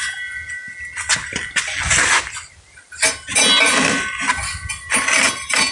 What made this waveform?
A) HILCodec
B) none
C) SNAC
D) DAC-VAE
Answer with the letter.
B